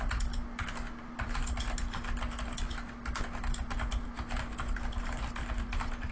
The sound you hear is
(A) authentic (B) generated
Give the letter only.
A